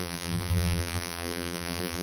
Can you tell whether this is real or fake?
fake